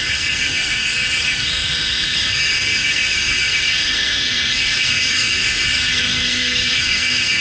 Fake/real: fake